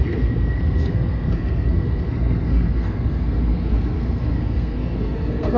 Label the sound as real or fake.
fake